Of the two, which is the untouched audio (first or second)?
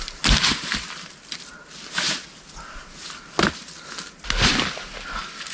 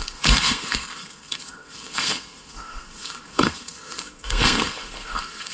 first